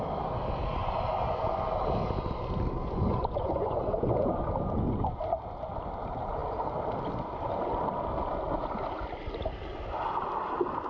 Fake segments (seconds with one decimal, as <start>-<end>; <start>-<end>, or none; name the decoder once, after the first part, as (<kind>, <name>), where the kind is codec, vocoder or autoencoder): 0.8-1.6 (vocoder, Vocos); 2.8-4.4

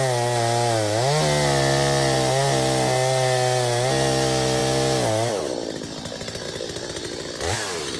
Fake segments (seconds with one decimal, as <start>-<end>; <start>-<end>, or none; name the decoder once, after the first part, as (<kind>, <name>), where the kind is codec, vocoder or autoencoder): none

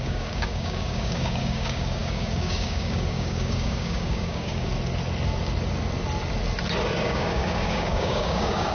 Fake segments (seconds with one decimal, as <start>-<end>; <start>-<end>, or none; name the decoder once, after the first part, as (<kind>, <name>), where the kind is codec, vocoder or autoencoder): 0.0-4.7 (codec, DAC); 7.0-8.7

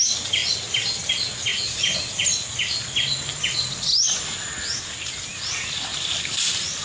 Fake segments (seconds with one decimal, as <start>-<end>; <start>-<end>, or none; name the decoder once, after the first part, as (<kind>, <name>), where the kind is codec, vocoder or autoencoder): none

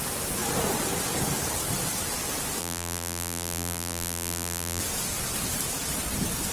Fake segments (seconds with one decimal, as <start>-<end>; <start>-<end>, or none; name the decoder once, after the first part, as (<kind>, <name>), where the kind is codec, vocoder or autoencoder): 2.6-4.8 (vocoder, BigVGAN v2)

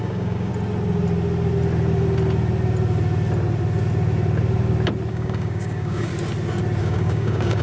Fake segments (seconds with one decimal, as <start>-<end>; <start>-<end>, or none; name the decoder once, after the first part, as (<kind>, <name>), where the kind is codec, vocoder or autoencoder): 0.0-0.5 (codec, DAC); 5.1-6.1; 6.8-7.6

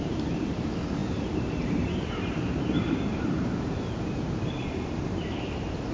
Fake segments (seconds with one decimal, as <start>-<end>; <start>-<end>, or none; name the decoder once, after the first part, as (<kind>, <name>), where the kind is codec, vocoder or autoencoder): 0.0-5.9 (vocoder, BigVGAN v2)

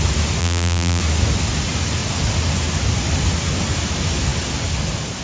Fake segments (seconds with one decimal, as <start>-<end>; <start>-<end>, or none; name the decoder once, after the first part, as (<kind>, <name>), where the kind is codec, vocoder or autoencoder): 0.4-1.0 (vocoder, BigVGAN v2)